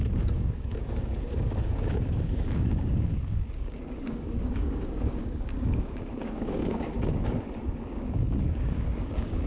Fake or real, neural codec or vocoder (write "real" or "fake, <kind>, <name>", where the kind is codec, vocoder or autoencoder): fake, codec, DAC